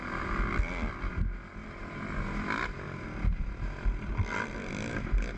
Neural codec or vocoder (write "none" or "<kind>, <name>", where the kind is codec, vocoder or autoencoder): none